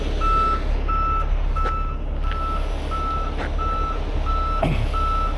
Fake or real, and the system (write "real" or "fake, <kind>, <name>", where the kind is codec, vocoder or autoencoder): real